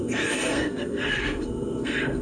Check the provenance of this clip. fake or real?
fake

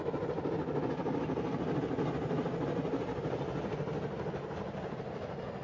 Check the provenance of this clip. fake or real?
real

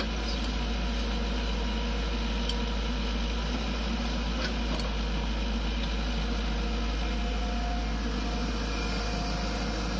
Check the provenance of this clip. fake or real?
real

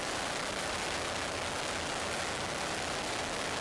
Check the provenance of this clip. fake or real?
real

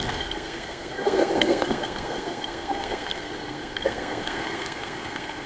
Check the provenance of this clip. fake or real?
fake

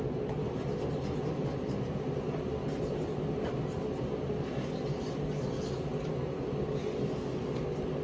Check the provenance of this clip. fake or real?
real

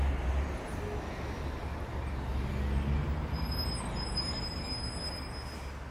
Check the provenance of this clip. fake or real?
real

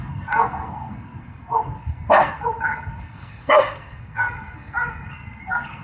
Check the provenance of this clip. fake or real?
fake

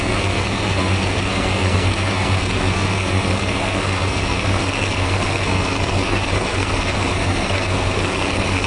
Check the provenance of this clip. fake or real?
fake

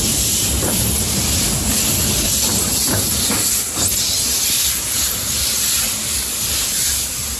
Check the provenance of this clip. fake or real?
real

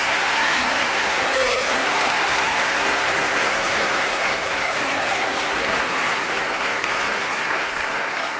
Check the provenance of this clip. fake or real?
fake